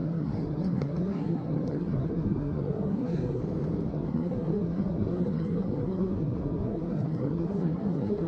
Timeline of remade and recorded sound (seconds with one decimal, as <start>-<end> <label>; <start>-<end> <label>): 0.0-3.4 remade; 3.4-3.9 recorded; 3.9-8.3 remade